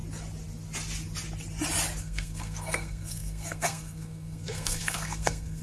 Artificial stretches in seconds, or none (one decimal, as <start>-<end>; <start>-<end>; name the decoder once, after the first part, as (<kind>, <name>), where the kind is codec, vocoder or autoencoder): 2.0-5.6 (codec, SNAC)